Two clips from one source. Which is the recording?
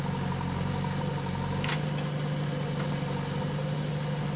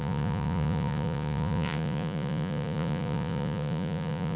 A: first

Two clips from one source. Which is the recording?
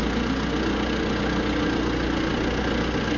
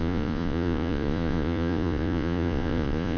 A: first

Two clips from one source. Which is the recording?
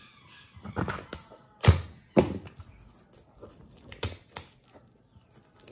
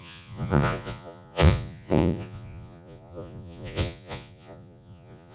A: first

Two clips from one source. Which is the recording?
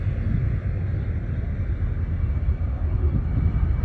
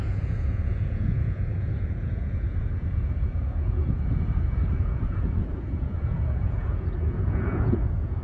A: first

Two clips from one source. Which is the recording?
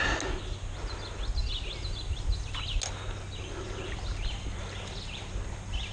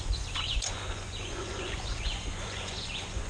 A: first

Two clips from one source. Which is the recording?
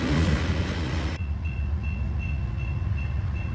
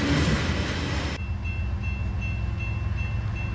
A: second